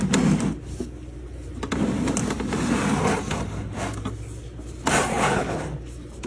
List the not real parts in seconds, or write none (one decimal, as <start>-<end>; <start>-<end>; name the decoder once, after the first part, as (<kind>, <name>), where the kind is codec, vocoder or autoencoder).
5.1-5.6 (codec, HILCodec)